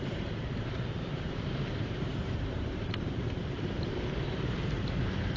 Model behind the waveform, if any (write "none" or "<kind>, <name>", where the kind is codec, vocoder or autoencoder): vocoder, BigVGAN v2